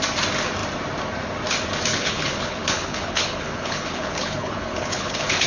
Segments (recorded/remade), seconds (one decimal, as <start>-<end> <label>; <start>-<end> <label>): 0.0-1.9 recorded; 1.9-5.5 remade